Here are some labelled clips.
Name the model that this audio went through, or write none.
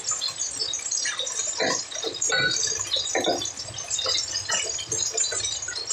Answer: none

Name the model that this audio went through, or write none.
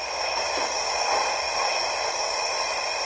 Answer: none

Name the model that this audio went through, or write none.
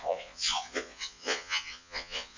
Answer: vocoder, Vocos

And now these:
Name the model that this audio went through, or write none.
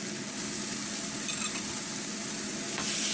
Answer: none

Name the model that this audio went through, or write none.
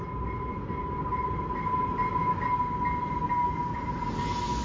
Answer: none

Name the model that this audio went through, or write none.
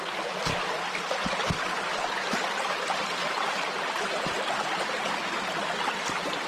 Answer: none